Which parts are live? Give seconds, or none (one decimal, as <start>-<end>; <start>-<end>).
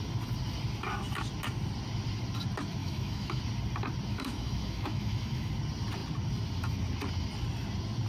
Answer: 0.0-2.8; 3.4-4.1; 5.5-8.1